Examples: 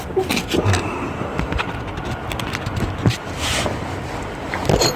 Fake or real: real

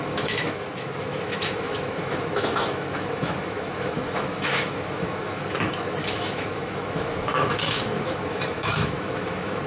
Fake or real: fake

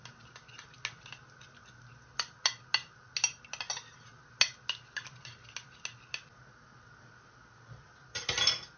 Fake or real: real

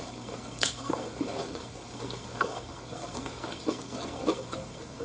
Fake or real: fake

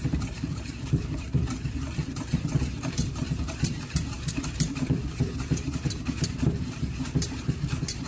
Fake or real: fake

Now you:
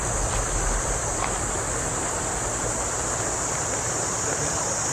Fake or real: fake